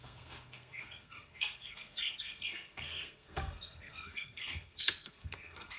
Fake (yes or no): yes